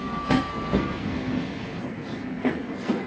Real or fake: fake